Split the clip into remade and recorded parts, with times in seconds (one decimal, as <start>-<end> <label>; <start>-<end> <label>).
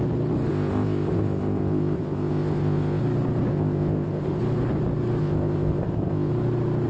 0.0-0.5 recorded; 0.5-3.0 remade; 3.0-3.5 recorded; 3.5-4.4 remade; 4.4-5.2 recorded; 5.2-6.3 remade; 6.3-6.9 recorded